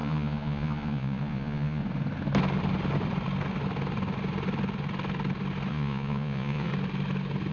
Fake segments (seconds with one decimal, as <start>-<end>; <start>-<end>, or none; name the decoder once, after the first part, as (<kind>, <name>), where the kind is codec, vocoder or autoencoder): 0.0-1.8 (vocoder, Vocos); 5.7-6.7